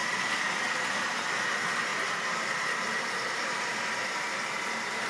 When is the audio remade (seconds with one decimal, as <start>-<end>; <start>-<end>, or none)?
1.9-5.1